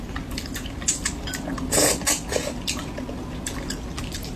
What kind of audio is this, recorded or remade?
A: recorded